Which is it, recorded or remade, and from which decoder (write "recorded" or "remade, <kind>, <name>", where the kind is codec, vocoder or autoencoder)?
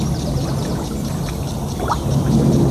recorded